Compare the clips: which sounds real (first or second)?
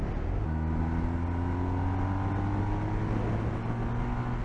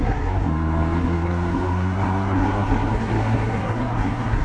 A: first